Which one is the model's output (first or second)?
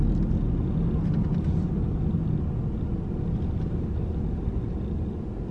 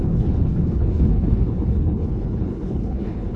second